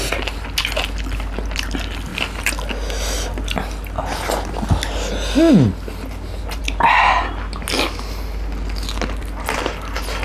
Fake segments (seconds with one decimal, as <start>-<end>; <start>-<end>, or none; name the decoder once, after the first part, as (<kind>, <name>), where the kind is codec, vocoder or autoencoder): none